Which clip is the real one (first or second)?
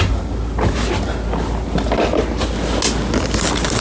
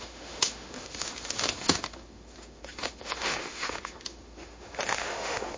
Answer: first